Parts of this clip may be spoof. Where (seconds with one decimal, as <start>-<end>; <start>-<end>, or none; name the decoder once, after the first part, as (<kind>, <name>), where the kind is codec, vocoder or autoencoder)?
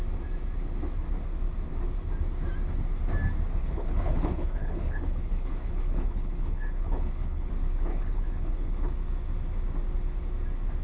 3.6-7.5 (codec, HILCodec); 7.9-8.9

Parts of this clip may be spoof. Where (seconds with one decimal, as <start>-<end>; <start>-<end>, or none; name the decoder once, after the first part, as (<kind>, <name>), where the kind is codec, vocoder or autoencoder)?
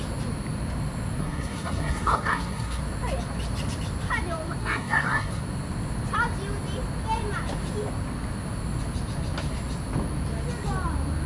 1.2-2.8 (codec, SNAC); 4.6-5.4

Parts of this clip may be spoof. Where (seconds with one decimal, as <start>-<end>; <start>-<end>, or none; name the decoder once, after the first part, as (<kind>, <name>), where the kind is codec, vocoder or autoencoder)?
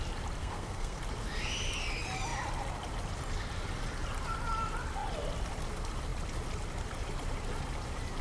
0.4-1.0 (codec, SNAC)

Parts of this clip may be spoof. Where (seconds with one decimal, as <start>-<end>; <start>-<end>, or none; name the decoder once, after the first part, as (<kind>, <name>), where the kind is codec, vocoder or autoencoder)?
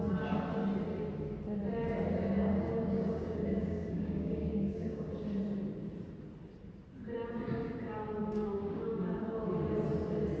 2.4-5.1 (codec, DAC); 8.2-9.5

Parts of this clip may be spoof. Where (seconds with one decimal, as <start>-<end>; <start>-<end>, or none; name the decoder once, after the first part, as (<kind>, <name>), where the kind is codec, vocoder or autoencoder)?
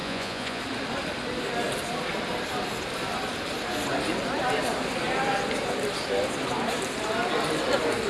0.0-0.6 (vocoder, Vocos)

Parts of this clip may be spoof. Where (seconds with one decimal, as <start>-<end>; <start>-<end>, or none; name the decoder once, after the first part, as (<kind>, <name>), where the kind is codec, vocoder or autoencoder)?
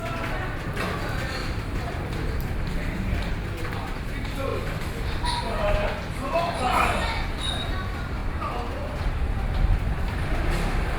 1.4-3.3 (vocoder, BigVGAN v2); 8.2-10.4